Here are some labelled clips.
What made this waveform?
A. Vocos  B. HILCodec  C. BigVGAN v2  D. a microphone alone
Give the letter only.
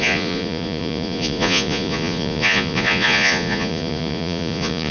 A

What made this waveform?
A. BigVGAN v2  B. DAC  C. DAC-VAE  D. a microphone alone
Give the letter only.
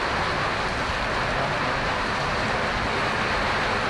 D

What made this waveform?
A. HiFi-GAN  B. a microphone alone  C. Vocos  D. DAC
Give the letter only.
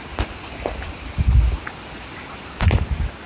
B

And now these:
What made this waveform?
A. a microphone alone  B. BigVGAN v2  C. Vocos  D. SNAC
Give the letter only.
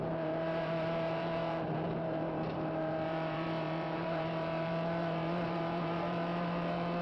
B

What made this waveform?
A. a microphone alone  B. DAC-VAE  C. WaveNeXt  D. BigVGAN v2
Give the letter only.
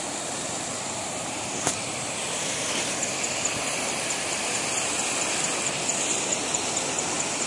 D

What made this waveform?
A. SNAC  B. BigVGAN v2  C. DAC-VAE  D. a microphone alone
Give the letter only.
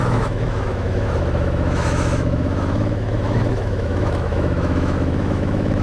C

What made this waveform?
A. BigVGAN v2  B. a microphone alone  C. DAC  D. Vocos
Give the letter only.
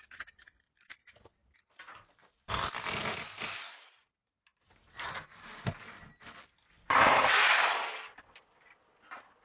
B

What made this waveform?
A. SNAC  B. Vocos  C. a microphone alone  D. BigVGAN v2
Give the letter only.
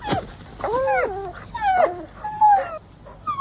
C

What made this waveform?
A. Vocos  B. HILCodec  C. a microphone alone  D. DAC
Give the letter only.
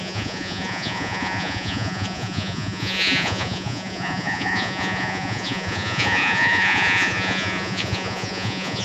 A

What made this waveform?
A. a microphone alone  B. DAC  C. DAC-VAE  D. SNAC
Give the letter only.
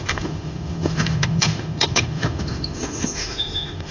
C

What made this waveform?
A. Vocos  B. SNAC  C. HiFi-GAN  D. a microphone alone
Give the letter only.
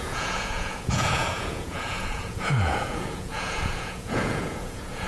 A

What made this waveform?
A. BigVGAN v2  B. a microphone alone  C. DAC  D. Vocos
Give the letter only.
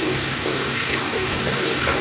C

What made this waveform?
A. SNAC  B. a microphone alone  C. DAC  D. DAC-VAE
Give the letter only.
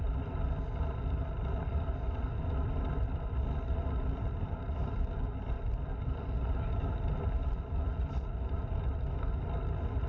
B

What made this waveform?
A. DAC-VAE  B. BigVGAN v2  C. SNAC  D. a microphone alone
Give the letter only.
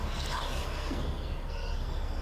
C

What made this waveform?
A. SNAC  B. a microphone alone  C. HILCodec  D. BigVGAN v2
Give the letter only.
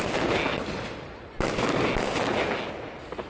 B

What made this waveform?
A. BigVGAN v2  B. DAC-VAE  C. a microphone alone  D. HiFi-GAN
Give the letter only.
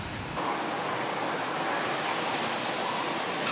C